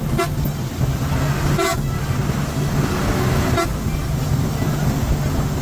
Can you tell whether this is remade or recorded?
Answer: recorded